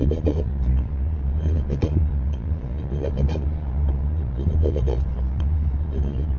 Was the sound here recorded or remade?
remade